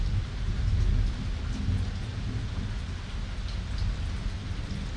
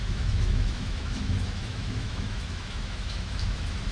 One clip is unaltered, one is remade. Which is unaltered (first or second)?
first